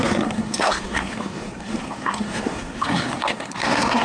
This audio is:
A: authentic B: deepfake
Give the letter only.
B